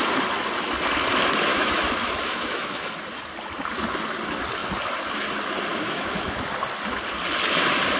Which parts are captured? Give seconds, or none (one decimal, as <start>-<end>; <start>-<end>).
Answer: 0.0-1.5; 2.9-5.7; 6.4-8.0